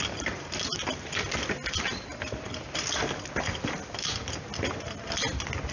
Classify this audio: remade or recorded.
recorded